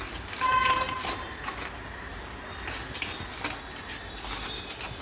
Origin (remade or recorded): recorded